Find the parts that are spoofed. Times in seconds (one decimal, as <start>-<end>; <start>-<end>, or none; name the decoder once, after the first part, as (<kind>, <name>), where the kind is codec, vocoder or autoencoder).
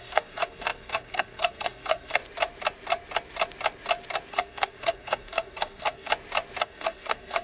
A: 0.0-2.2 (codec, SNAC); 4.3-6.1; 6.6-7.4